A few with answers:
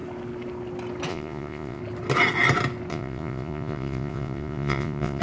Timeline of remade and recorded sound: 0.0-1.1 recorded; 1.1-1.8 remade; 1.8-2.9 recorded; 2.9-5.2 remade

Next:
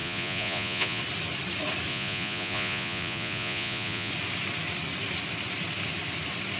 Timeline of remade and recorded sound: 0.0-1.0 remade; 1.0-1.9 recorded; 1.9-4.1 remade; 4.1-6.6 recorded